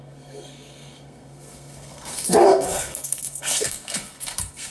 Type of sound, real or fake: fake